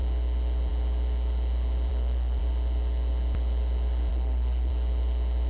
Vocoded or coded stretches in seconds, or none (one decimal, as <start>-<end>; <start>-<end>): 1.9-2.4; 4.1-4.7